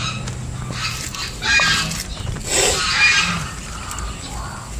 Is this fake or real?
real